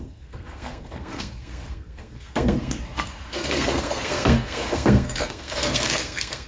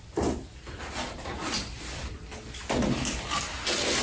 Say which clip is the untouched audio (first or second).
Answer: second